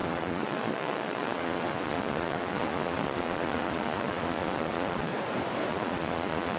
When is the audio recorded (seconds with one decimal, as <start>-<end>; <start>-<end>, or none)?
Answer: 5.1-5.7